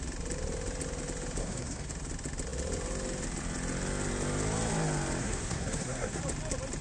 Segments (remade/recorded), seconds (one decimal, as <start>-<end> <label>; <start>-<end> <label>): 0.0-1.4 recorded; 1.4-1.9 remade; 1.9-5.2 recorded; 5.2-6.2 remade; 6.2-6.8 recorded